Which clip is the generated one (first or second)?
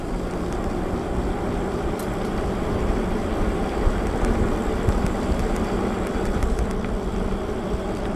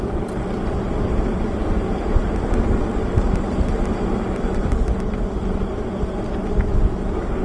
first